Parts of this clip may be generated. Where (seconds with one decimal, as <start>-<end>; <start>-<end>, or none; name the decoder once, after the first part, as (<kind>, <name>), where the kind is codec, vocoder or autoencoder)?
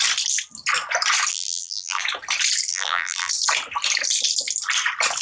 1.3-2.0 (vocoder, BigVGAN v2); 2.7-3.3